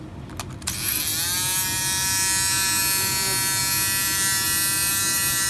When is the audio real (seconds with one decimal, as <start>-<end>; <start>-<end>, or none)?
0.0-5.5